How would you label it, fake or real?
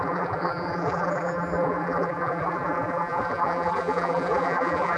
fake